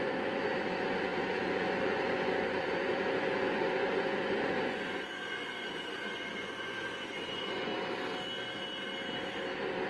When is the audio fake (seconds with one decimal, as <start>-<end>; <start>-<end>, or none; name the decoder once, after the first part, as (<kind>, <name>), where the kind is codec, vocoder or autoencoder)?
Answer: 0.0-7.7 (vocoder, Vocos)